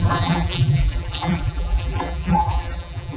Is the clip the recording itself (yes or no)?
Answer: no